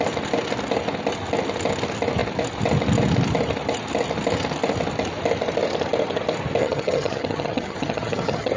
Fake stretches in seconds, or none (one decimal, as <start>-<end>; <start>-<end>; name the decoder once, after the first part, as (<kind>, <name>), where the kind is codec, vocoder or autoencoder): 6.6-8.6 (vocoder, HiFi-GAN)

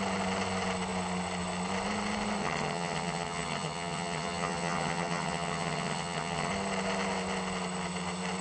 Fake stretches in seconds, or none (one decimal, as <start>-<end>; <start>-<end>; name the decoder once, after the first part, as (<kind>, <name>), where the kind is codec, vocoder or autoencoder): 2.4-6.5 (vocoder, HiFi-GAN)